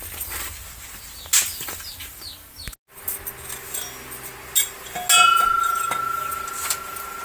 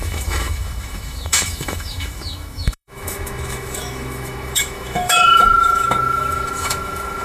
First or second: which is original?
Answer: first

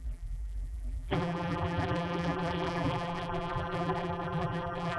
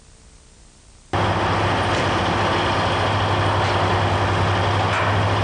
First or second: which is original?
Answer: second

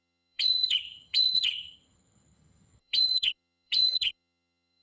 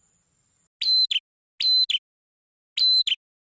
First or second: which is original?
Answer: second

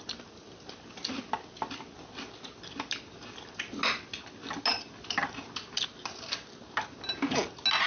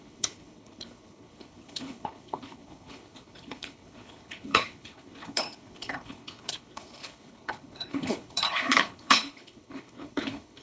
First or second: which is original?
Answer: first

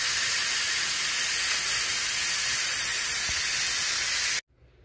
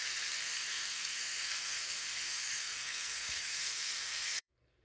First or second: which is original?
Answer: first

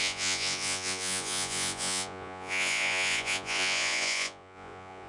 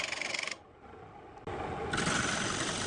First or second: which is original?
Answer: second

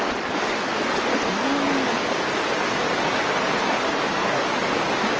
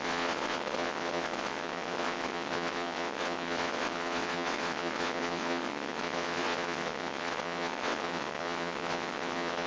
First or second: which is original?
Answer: first